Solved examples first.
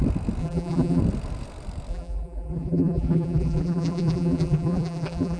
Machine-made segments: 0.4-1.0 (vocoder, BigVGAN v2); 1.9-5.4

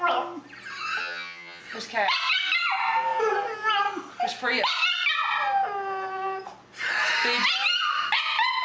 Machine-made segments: 1.0-1.6 (vocoder, HiFi-GAN)

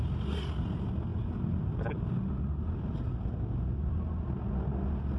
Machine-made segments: none

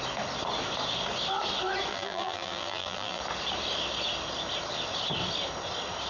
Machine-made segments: 1.9-3.2 (vocoder, BigVGAN v2)

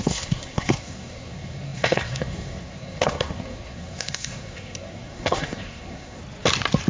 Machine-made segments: 0.0-6.2 (codec, SNAC)

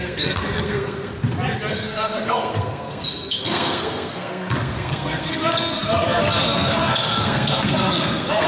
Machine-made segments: 0.0-1.1 (codec, SNAC); 1.7-8.5

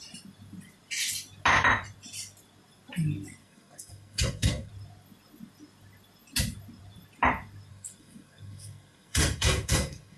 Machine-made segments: 3.4-4.7 (codec, SNAC); 7.7-10.2

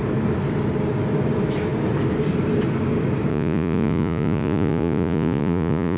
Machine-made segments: 3.3-6.0 (vocoder, Vocos)